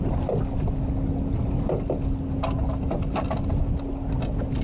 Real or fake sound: real